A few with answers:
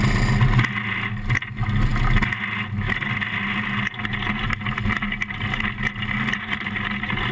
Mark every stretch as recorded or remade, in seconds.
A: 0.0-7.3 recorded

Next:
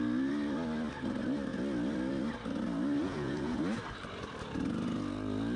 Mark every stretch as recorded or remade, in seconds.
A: 0.0-3.0 recorded; 3.0-3.6 remade; 3.6-5.6 recorded

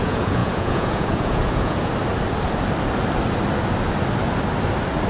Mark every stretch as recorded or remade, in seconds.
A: 0.0-1.9 remade; 1.9-5.1 recorded

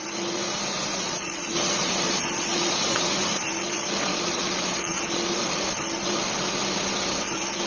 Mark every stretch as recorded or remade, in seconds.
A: 0.0-0.9 recorded; 0.9-3.1 remade; 3.1-4.1 recorded; 4.1-5.5 remade; 5.5-7.7 recorded

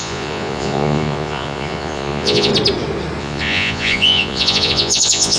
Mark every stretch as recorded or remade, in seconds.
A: 0.0-2.5 remade; 2.5-3.2 recorded; 3.2-5.4 remade

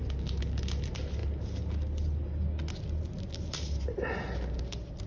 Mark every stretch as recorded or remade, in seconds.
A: 0.0-5.1 recorded

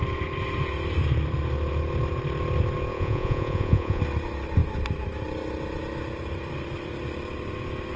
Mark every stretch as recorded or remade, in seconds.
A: 0.0-2.9 recorded; 2.9-4.0 remade; 4.0-8.0 recorded